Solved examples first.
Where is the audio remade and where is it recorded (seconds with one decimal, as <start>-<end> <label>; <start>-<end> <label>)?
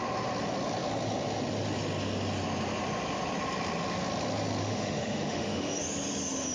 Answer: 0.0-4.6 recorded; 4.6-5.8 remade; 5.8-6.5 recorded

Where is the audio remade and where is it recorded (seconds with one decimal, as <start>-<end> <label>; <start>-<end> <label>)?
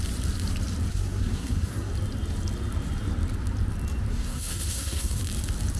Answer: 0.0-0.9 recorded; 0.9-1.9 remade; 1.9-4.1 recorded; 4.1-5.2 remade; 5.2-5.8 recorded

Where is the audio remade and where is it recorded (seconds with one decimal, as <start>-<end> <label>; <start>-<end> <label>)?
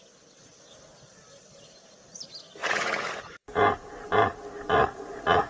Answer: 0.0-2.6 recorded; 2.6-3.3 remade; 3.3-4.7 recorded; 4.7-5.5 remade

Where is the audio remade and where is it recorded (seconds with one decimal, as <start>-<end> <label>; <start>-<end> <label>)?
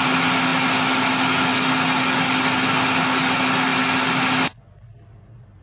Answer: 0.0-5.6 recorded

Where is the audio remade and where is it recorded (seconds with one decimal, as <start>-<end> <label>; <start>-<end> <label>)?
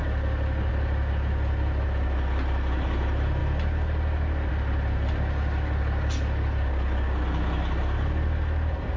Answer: 0.0-9.0 recorded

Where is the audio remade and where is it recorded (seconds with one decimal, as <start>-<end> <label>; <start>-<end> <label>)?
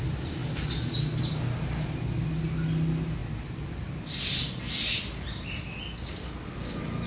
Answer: 0.0-7.1 recorded